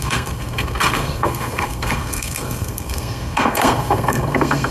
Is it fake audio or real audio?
fake